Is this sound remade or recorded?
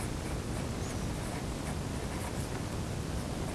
recorded